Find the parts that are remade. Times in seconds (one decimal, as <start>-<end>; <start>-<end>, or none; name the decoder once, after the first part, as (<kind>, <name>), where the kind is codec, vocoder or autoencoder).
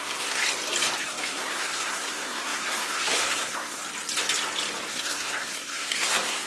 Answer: 0.0-0.4 (codec, SNAC); 1.0-3.8; 4.9-6.5